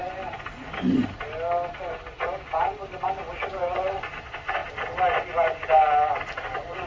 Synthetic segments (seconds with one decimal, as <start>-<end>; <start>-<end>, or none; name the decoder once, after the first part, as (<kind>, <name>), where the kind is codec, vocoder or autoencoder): 3.5-4.1 (vocoder, Vocos)